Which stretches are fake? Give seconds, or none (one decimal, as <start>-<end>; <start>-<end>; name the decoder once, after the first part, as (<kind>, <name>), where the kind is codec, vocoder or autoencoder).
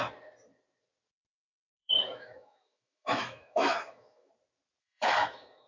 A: 1.7-4.3 (autoencoder, DAC-VAE); 4.8-5.7